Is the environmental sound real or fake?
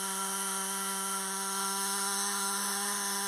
fake